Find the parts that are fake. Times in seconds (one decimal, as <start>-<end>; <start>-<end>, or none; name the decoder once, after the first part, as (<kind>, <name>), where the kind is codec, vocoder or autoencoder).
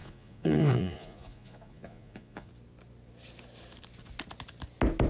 0.0-2.5 (vocoder, Vocos)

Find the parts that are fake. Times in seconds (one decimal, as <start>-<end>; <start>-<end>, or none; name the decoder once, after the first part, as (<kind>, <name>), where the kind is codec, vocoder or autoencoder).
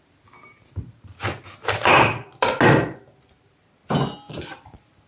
0.0-2.3 (vocoder, BigVGAN v2); 3.4-3.8; 4.3-5.1